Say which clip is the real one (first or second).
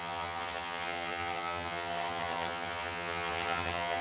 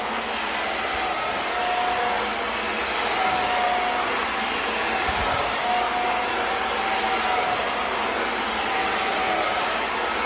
second